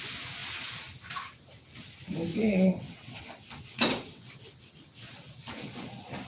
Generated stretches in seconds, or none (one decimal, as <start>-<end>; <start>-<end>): 2.3-3.2; 3.7-4.3